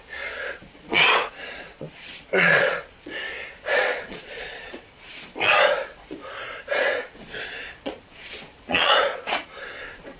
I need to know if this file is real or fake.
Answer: fake